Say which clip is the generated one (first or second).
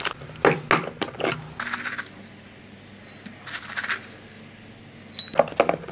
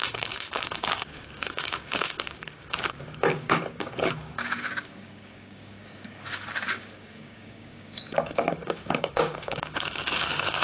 second